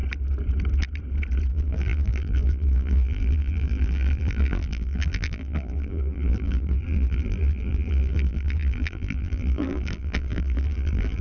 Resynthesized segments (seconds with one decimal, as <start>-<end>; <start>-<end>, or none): 1.5-11.2